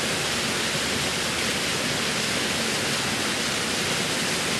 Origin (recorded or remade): recorded